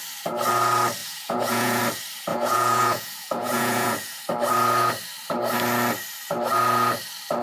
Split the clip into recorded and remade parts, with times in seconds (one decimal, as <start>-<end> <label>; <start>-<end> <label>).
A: 0.0-1.0 recorded; 1.0-1.8 remade; 1.8-2.3 recorded; 2.3-4.2 remade; 4.2-7.4 recorded